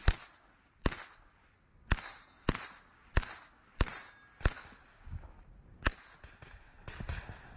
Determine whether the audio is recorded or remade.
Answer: recorded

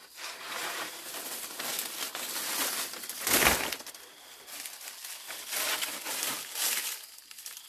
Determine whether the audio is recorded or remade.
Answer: recorded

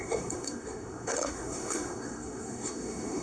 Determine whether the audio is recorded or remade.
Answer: remade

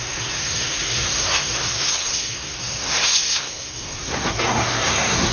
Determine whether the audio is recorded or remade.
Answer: remade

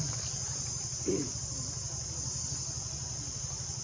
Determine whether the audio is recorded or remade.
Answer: recorded